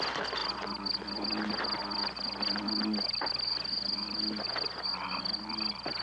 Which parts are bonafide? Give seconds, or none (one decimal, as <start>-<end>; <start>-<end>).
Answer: 0.0-6.0